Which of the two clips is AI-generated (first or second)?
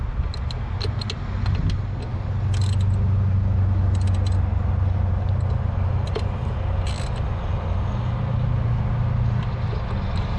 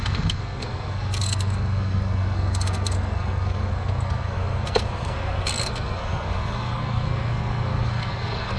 second